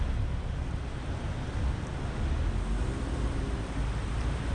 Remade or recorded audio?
recorded